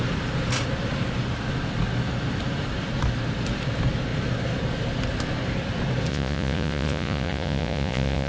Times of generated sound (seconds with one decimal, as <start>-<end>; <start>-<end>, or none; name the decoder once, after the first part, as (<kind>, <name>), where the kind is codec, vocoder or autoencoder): 6.1-8.3 (vocoder, Vocos)